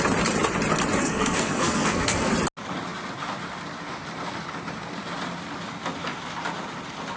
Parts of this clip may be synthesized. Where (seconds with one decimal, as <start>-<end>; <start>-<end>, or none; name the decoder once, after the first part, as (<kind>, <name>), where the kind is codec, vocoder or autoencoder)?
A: 1.0-2.3 (codec, SNAC)